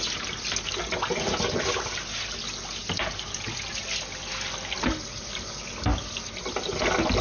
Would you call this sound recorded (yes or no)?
yes